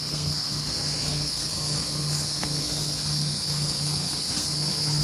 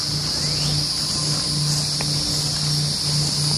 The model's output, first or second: first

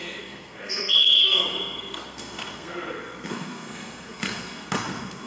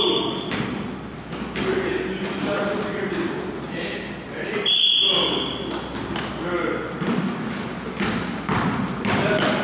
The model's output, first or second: first